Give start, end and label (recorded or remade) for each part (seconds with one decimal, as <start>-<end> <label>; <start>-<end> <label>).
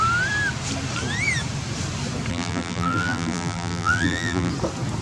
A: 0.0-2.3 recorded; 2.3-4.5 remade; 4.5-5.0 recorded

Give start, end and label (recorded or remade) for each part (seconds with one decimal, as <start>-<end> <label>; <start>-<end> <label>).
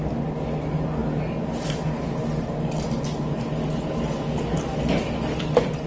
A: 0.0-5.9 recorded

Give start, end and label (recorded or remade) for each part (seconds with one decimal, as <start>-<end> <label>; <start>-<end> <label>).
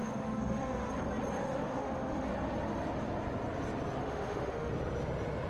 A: 0.0-0.9 remade; 0.9-1.4 recorded; 1.4-2.3 remade; 2.3-4.0 recorded; 4.0-4.7 remade; 4.7-5.5 recorded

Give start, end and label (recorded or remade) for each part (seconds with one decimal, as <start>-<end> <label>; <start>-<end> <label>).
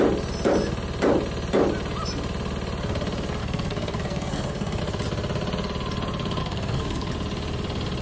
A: 0.0-3.4 recorded; 3.4-4.8 remade; 4.8-6.4 recorded; 6.4-7.1 remade; 7.1-8.0 recorded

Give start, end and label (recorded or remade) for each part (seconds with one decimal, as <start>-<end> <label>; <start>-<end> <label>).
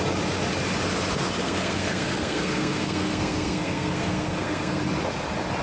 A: 0.0-1.4 recorded; 1.4-4.8 remade; 4.8-5.6 recorded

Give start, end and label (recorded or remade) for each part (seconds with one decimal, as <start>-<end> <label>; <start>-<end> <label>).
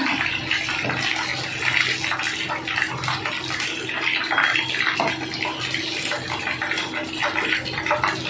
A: 0.0-8.3 recorded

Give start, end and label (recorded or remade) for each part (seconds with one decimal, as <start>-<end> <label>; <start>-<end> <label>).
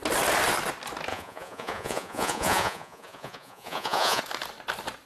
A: 0.0-1.1 recorded; 1.1-4.2 remade; 4.2-5.1 recorded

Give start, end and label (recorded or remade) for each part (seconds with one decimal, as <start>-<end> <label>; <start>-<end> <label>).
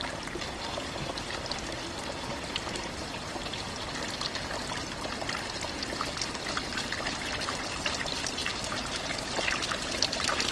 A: 0.0-10.5 recorded